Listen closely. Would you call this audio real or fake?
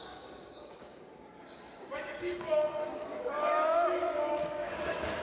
fake